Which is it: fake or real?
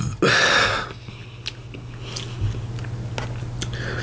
real